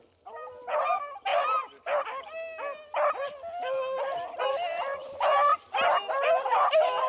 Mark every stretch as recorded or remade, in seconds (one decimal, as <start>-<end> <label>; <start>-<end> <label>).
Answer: 0.0-7.1 recorded